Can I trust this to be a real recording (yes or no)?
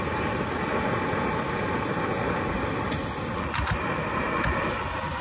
yes